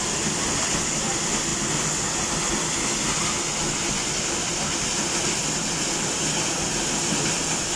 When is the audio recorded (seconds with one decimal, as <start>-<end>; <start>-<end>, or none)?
0.0-7.8